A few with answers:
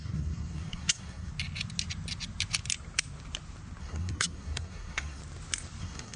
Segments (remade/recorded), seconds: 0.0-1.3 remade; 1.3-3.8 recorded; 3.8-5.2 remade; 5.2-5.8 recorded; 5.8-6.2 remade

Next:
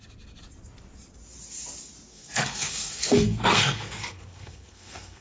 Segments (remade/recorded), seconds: 0.0-2.1 recorded; 2.1-5.2 remade

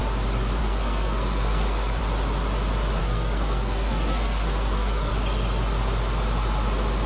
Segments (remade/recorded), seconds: 0.0-0.6 recorded; 0.6-2.0 remade; 2.0-3.0 recorded; 3.0-5.1 remade; 5.1-7.1 recorded

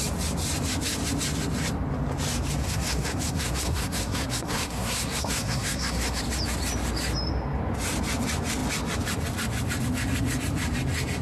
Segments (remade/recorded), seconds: 0.0-2.6 recorded; 2.6-6.2 remade; 6.2-11.2 recorded

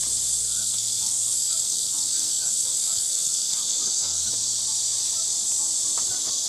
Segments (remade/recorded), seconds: 0.0-0.4 recorded; 0.4-4.3 remade; 4.3-6.5 recorded

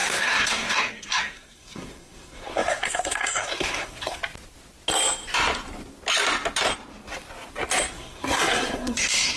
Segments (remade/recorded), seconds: 0.0-4.2 remade; 4.2-7.9 recorded; 7.9-9.4 remade

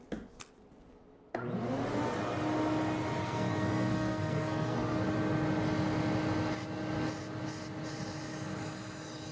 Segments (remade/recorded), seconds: 0.0-3.2 recorded; 3.2-5.1 remade; 5.1-9.3 recorded